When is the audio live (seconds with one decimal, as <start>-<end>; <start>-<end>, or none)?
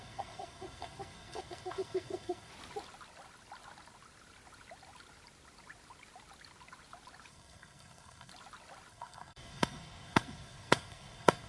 2.5-7.3; 8.3-8.9